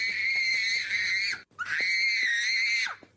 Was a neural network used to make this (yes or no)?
no